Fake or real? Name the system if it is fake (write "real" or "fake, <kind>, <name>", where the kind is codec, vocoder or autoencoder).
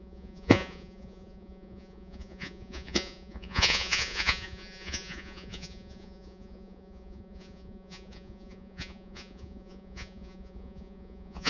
fake, vocoder, Vocos